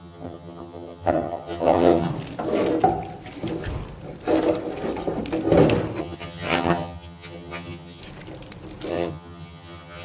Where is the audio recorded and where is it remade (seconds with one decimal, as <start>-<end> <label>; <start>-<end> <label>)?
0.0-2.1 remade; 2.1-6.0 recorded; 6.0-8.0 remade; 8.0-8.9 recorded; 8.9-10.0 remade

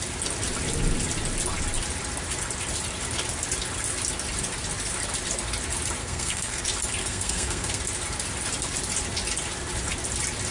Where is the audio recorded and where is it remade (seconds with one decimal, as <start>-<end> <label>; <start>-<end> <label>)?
0.0-6.0 recorded; 6.0-6.6 remade; 6.6-7.0 recorded; 7.0-7.8 remade; 7.8-10.5 recorded

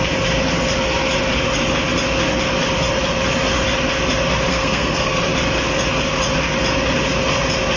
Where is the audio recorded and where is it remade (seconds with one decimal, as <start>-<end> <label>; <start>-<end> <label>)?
0.0-4.5 recorded; 4.5-5.2 remade; 5.2-7.8 recorded

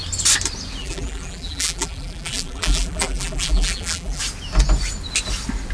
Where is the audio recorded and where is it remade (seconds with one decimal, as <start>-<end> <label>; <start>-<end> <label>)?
0.0-0.8 recorded; 0.8-4.2 remade; 4.2-5.7 recorded

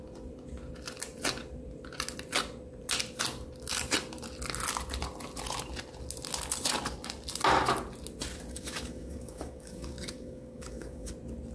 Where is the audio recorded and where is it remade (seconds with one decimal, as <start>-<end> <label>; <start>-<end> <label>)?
0.0-8.5 recorded; 8.5-11.1 remade; 11.1-11.5 recorded

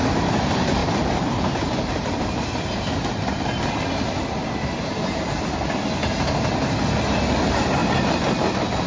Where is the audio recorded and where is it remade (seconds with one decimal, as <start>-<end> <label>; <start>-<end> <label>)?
0.0-0.8 recorded; 0.8-2.2 remade; 2.2-8.9 recorded

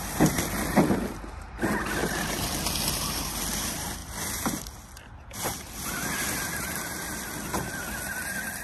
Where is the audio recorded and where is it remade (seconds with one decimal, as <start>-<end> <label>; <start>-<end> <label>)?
0.0-8.6 recorded